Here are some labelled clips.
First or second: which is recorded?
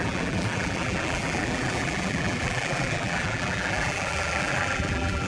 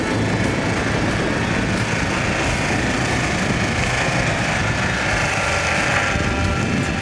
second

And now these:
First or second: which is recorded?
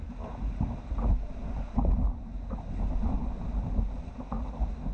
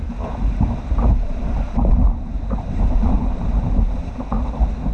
first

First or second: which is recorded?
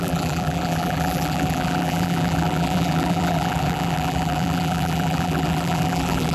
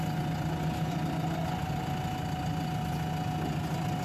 second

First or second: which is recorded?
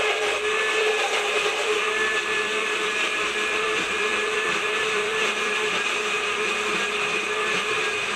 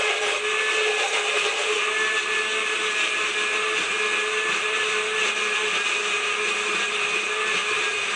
second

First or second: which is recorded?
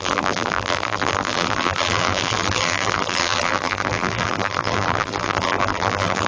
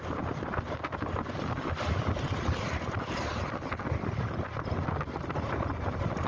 second